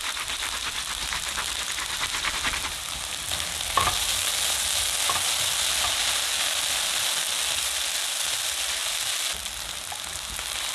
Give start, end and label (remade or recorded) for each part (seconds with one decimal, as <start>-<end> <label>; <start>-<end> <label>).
0.0-10.7 recorded